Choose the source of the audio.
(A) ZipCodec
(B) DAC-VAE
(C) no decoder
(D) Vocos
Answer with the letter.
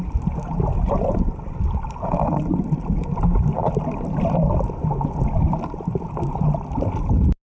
C